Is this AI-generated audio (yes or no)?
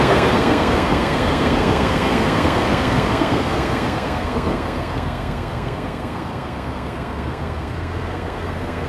yes